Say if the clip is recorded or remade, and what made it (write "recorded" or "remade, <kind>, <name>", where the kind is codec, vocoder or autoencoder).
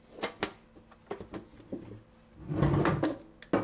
recorded